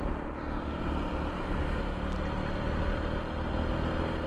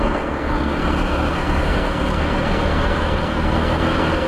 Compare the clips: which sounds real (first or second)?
first